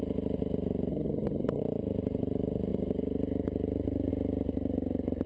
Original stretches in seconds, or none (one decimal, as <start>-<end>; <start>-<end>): 0.0-0.9; 1.6-5.3